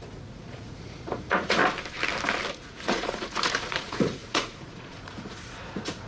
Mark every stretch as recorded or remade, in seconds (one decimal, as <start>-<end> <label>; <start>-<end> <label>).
0.0-1.6 remade; 1.6-2.5 recorded; 2.5-6.1 remade